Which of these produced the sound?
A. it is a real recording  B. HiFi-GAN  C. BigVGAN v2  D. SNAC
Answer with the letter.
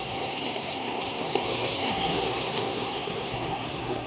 D